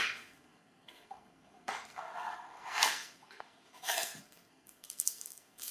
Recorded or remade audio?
remade